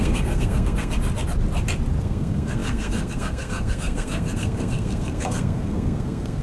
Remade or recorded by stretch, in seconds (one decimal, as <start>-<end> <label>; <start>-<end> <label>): 0.0-0.9 remade; 0.9-2.0 recorded; 2.0-6.4 remade